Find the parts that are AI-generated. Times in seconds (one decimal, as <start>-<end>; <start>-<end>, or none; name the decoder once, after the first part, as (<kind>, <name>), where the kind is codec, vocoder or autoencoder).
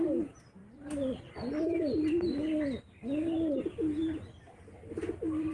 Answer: none